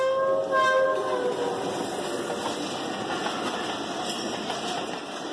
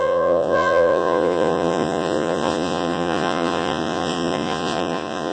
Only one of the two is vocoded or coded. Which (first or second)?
second